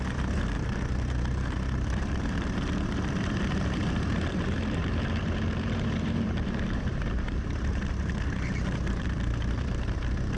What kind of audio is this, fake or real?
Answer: fake